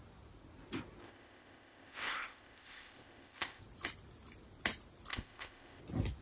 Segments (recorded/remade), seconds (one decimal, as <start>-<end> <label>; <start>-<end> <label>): 0.0-1.0 recorded; 1.0-3.6 remade; 3.6-5.1 recorded; 5.1-5.8 remade; 5.8-6.2 recorded